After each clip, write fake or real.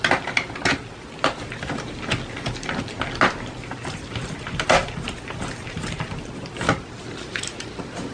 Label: real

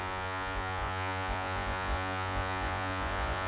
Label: fake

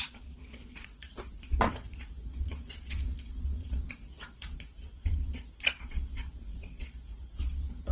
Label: fake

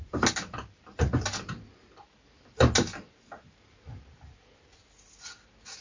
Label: real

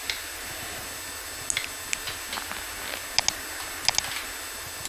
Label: real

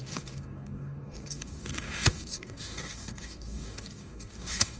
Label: fake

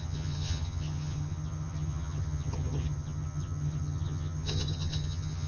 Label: fake